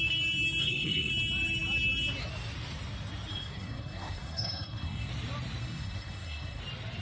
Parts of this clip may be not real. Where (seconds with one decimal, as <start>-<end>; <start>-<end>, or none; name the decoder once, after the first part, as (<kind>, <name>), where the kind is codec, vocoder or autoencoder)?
0.6-1.1 (codec, SNAC); 3.3-5.1; 5.6-6.6